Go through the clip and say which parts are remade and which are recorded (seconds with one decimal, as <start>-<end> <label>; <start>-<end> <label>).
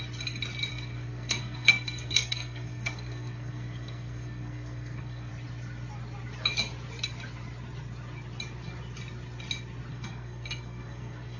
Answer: 0.0-0.7 recorded; 0.7-5.3 remade; 5.3-9.9 recorded; 9.9-11.4 remade